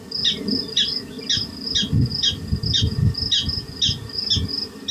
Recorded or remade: recorded